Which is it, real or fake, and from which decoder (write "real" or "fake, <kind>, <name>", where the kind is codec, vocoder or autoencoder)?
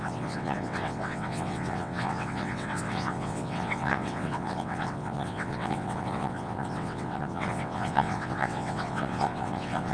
fake, vocoder, WaveNeXt